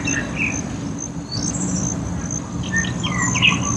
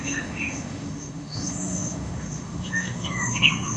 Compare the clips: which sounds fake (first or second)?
second